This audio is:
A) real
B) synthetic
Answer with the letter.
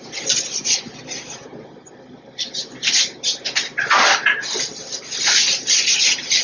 A